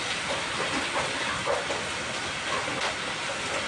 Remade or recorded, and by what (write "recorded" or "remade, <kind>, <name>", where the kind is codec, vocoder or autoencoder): recorded